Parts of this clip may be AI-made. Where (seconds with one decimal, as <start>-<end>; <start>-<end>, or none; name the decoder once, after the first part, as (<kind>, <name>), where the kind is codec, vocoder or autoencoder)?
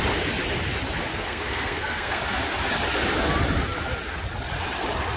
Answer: 1.1-2.2 (codec, SNAC)